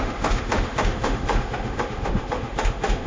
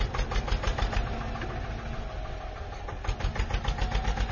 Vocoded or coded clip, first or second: first